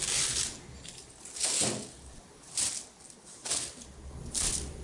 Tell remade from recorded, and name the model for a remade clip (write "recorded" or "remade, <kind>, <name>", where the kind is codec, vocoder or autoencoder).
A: recorded